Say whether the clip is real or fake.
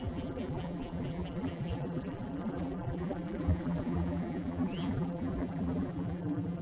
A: fake